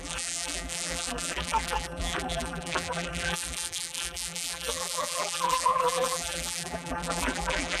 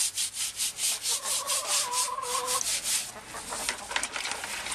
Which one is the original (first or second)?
second